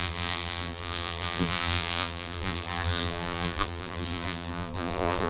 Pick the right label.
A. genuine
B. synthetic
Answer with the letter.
B